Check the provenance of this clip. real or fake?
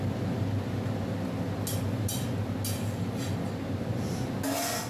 real